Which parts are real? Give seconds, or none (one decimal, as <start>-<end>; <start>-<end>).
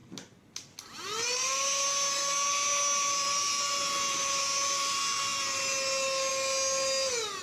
0.0-7.4